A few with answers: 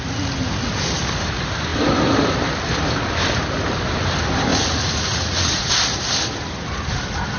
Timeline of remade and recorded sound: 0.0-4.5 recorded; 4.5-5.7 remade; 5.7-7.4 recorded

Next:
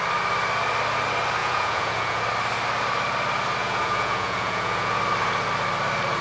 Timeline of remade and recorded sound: 0.0-1.4 recorded; 1.4-2.2 remade; 2.2-3.6 recorded; 3.6-4.9 remade; 4.9-6.2 recorded

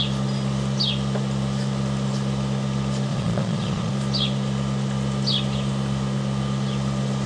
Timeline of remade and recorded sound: 0.0-3.1 recorded; 3.1-3.9 remade; 3.9-7.3 recorded